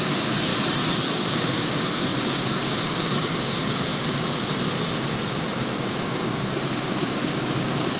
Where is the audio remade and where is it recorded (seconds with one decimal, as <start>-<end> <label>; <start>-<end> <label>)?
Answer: 0.0-0.5 remade; 0.5-1.3 recorded; 1.3-3.9 remade; 3.9-5.5 recorded; 5.5-8.0 remade

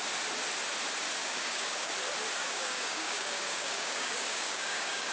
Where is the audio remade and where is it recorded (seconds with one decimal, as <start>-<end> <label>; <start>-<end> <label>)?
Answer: 0.0-1.2 recorded; 1.2-1.9 remade; 1.9-2.4 recorded; 2.4-5.1 remade